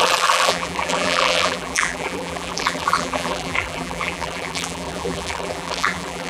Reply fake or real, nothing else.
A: fake